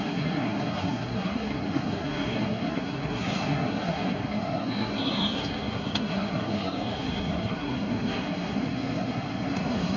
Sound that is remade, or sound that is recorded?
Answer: remade